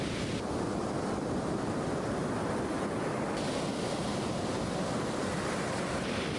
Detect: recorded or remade recorded